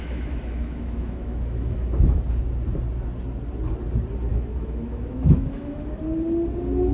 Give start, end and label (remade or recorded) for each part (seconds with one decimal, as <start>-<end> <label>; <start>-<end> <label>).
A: 0.0-2.2 remade; 2.2-4.3 recorded; 4.3-6.0 remade; 6.0-6.9 recorded